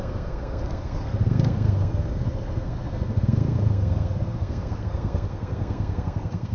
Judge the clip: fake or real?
fake